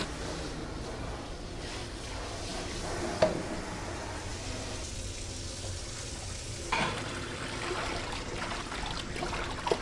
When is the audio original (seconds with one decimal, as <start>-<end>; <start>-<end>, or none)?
0.0-9.8